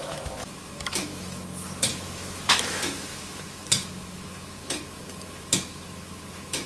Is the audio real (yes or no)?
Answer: no